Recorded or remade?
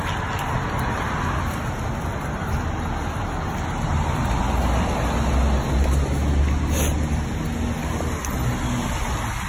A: recorded